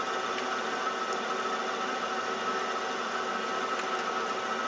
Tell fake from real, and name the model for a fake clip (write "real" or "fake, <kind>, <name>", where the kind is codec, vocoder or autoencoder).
real